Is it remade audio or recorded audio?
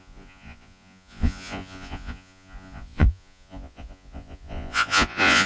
remade